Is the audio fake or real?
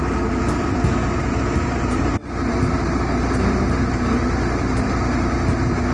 fake